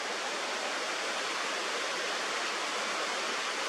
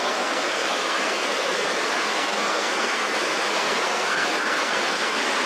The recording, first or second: first